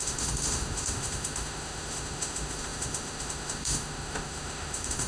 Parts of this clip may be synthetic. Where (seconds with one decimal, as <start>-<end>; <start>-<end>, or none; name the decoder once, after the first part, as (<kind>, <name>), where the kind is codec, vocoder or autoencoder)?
0.0-5.1 (autoencoder, DAC-VAE)